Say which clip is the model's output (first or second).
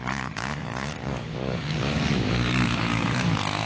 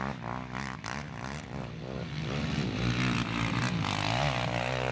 first